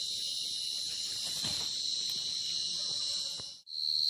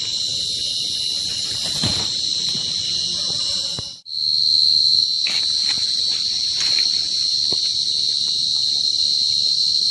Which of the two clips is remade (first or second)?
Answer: second